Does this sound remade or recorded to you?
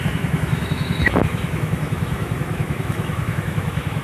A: remade